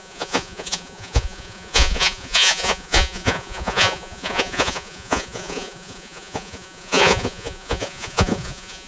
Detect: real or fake fake